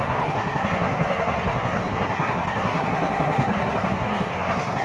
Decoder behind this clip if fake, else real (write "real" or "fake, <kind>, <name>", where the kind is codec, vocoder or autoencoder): fake, codec, SNAC